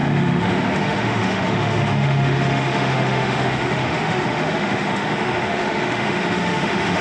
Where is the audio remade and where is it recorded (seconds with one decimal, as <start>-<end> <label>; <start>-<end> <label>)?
0.0-7.0 remade